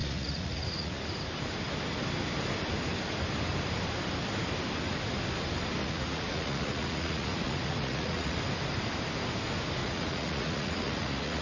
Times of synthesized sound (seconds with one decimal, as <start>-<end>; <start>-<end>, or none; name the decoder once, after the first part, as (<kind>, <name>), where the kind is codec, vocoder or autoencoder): 0.0-1.0 (vocoder, Vocos); 5.8-8.4; 9.8-11.4